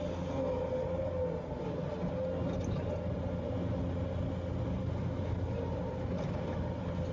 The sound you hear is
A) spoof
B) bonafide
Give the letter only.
B